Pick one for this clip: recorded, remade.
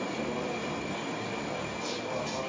recorded